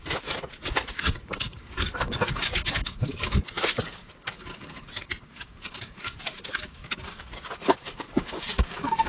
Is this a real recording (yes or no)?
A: no